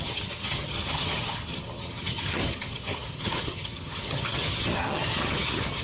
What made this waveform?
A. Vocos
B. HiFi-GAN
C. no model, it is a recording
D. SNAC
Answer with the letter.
B